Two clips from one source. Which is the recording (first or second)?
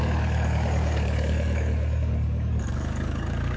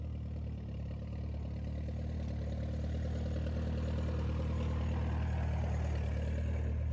second